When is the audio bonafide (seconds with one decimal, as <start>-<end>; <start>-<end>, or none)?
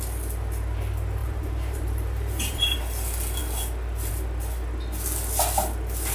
0.0-1.2; 2.8-6.1